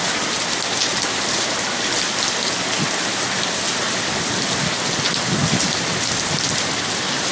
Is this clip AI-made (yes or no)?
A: no